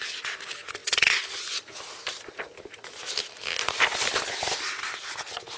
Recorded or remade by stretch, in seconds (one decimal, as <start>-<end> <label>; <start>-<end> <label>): 0.0-5.6 recorded